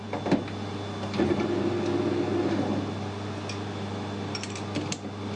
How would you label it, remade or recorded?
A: recorded